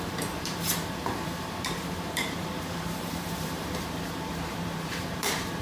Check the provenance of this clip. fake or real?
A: fake